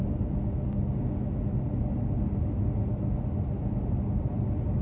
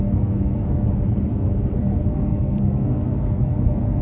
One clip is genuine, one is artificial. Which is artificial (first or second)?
second